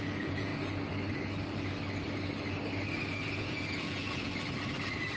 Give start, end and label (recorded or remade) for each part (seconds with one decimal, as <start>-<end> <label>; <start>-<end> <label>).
0.0-0.5 remade; 0.5-3.4 recorded; 3.4-4.3 remade; 4.3-5.2 recorded